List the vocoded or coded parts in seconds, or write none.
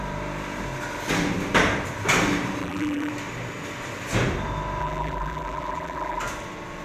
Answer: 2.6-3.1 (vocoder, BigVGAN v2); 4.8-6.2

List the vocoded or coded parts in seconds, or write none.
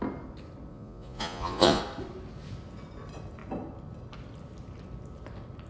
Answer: 0.7-1.8 (vocoder, Vocos)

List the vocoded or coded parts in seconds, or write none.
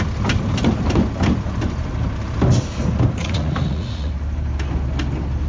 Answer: 3.2-4.1 (vocoder, Vocos)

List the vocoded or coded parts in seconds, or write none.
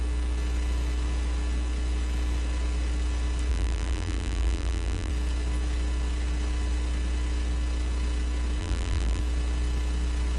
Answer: 3.5-5.1 (vocoder, BigVGAN v2); 8.6-9.2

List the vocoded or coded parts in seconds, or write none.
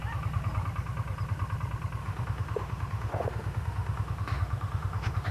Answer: 2.0-5.3 (autoencoder, DAC-VAE)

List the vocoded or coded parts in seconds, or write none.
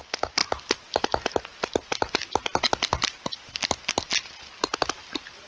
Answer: none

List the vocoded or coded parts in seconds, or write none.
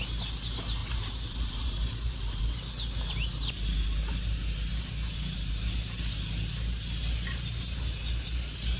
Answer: 0.8-2.4 (vocoder, BigVGAN v2)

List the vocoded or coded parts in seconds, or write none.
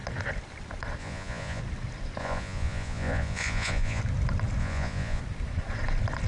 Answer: 1.0-1.6 (vocoder, Vocos); 2.2-4.0; 4.6-5.2